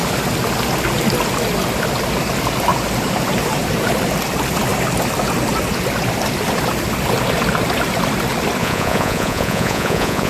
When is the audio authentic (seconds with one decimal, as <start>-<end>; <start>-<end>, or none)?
0.0-8.6